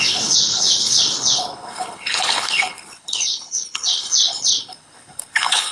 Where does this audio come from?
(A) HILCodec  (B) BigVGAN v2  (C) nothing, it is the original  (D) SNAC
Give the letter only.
A